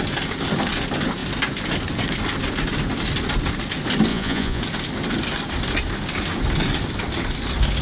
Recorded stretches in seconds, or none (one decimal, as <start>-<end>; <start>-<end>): 0.0-4.1; 4.6-7.8